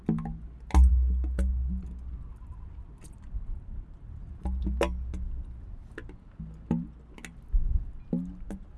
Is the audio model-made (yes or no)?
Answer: no